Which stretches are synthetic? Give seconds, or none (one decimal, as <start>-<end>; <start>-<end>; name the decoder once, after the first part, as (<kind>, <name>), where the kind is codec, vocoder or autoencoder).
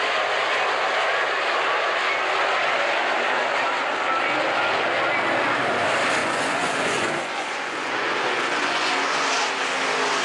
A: 6.2-9.3 (vocoder, Vocos)